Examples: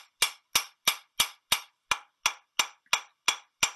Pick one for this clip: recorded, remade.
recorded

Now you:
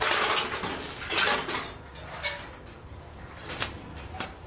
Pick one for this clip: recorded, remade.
recorded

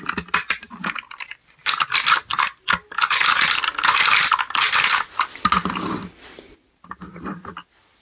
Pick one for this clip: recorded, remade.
recorded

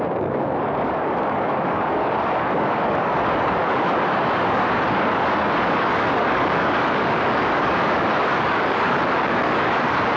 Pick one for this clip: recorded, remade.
remade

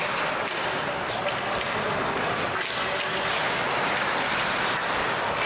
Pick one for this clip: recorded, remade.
recorded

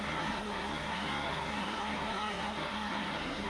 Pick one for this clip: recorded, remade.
remade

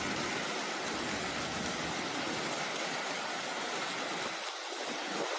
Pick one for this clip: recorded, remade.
recorded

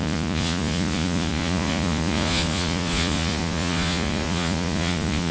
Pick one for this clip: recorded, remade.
remade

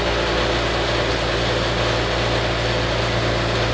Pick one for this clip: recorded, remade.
recorded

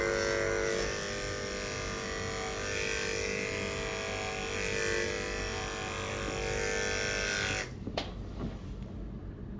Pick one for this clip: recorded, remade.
recorded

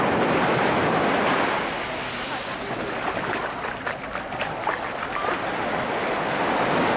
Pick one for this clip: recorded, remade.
recorded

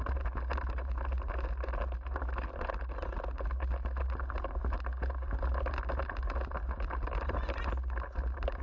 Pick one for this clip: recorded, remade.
recorded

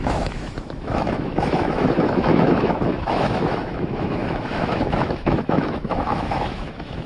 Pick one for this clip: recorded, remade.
remade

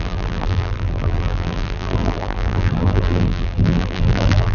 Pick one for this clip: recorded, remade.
remade